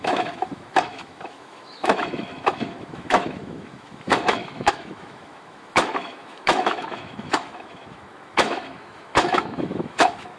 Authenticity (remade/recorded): remade